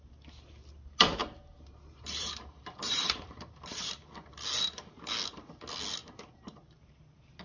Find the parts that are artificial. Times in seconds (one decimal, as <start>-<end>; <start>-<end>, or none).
1.2-3.9